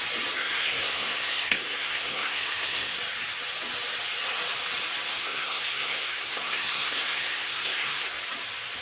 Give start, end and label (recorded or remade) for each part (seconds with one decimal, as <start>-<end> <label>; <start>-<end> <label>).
0.0-0.4 recorded; 0.4-2.9 remade; 2.9-5.1 recorded; 5.1-8.2 remade; 8.2-8.8 recorded